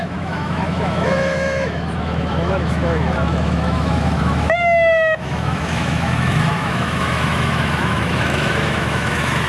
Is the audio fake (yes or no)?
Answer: yes